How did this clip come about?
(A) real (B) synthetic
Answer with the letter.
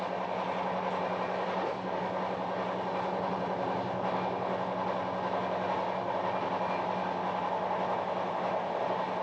A